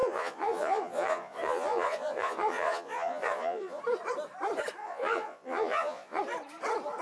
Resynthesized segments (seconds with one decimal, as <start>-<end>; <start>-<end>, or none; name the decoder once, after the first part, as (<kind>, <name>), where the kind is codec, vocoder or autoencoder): 0.0-3.8 (vocoder, Vocos); 4.8-6.2